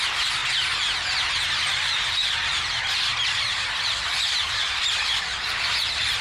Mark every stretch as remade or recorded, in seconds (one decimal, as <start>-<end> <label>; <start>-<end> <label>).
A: 0.0-0.4 remade; 0.4-2.1 recorded; 2.1-6.2 remade